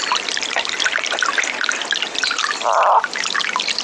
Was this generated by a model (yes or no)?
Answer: no